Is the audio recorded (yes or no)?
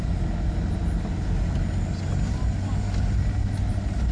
yes